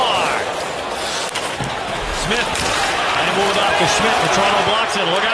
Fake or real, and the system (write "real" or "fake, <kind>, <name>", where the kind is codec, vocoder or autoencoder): real